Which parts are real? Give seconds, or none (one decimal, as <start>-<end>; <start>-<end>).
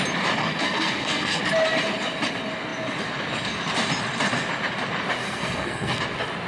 0.0-0.4; 1.4-5.2; 6.0-6.5